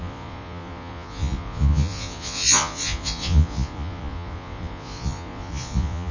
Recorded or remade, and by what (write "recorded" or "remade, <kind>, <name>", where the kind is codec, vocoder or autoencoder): remade, vocoder, Vocos